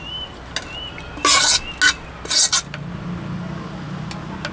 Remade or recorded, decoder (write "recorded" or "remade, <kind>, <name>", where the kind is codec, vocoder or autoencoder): recorded